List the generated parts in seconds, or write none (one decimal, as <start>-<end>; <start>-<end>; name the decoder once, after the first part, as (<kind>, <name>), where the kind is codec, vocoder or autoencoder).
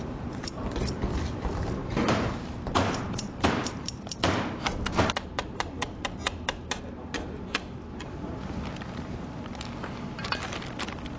1.8-6.9 (vocoder, BigVGAN v2)